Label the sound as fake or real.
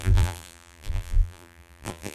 fake